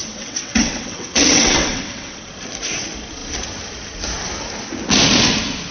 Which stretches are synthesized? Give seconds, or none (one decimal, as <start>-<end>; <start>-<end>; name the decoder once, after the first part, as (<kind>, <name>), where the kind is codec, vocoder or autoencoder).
0.0-2.3 (vocoder, WaveNeXt)